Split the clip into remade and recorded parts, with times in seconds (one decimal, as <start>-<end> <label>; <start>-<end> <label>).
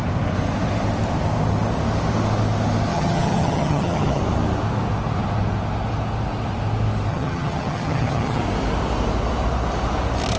0.0-2.9 recorded; 2.9-4.2 remade; 4.2-7.1 recorded; 7.1-8.4 remade; 8.4-10.4 recorded